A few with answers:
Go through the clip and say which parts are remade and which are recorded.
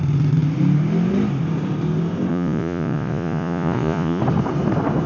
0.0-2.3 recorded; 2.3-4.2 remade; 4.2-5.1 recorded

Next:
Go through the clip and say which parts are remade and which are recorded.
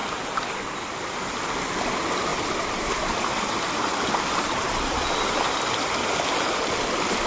0.0-7.3 recorded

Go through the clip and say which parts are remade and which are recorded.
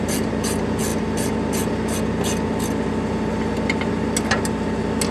0.0-5.1 recorded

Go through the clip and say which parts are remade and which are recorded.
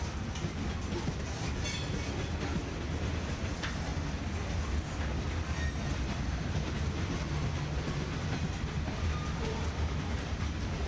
0.0-10.9 recorded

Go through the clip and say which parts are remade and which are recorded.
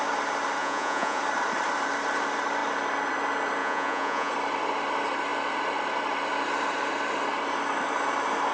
0.0-0.6 recorded; 0.6-1.2 remade; 1.2-3.6 recorded; 3.6-4.3 remade; 4.3-8.5 recorded